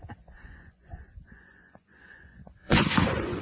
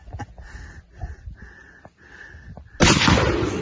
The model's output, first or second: first